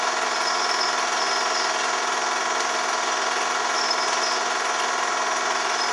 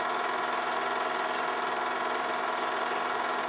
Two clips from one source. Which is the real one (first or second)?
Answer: first